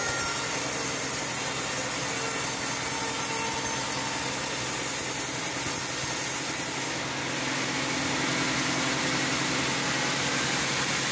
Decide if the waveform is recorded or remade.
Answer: recorded